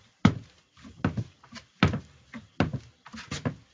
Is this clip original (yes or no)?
yes